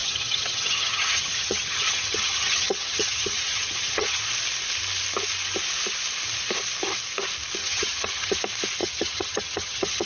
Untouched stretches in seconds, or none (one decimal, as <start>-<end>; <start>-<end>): 4.2-7.6; 8.4-8.8